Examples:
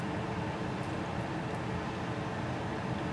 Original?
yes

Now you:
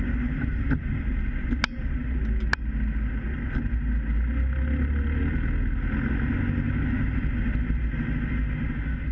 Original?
yes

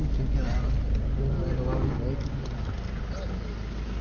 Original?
yes